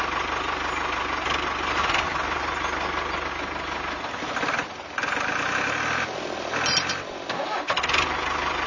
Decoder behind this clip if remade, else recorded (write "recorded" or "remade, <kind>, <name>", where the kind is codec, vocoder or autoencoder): recorded